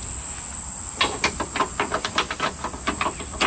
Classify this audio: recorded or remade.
recorded